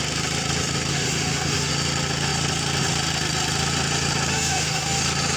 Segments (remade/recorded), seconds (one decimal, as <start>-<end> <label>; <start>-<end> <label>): 0.0-0.9 recorded; 0.9-1.7 remade; 1.7-4.3 recorded; 4.3-5.0 remade; 5.0-5.4 recorded